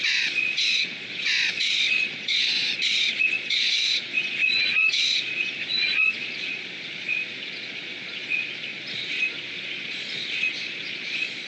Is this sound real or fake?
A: fake